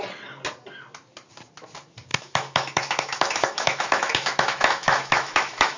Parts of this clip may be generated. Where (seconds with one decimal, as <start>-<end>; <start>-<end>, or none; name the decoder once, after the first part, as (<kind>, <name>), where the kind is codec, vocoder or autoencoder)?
2.1-5.8 (autoencoder, DAC-VAE)